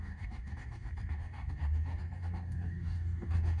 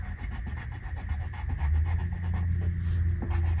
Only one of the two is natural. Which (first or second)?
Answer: second